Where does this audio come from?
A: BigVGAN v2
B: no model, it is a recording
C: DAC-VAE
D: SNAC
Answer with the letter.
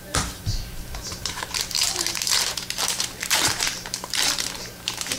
A